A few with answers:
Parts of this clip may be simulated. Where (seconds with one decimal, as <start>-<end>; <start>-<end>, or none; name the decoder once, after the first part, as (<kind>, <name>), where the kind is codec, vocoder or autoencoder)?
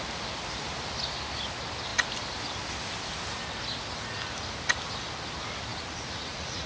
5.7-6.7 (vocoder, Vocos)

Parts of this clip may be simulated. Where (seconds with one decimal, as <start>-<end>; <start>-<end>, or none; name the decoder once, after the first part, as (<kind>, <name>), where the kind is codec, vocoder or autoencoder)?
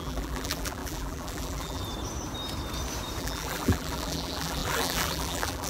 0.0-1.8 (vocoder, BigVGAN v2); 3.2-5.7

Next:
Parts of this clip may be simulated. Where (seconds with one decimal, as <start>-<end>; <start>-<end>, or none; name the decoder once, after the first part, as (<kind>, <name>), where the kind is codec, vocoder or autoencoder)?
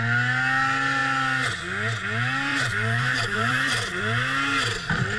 2.5-4.0 (vocoder, BigVGAN v2)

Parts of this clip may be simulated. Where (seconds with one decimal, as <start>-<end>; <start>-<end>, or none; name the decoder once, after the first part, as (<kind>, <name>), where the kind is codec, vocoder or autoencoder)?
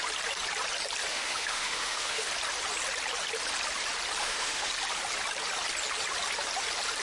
1.1-2.3 (autoencoder, DAC-VAE); 4.2-4.7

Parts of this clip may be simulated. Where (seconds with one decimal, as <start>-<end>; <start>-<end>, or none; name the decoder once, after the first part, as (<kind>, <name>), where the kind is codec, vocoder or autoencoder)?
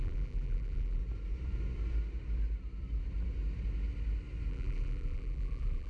0.0-1.0 (vocoder, BigVGAN v2); 4.5-5.9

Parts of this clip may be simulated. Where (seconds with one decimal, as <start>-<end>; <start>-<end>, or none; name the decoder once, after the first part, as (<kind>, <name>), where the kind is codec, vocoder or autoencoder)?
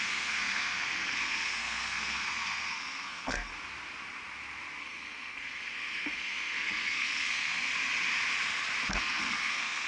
0.0-3.5 (codec, SNAC); 4.8-7.7; 9.0-9.9